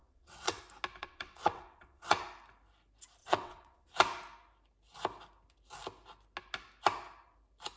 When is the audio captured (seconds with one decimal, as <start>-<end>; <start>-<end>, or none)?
0.6-1.0; 2.2-3.2; 3.9-7.8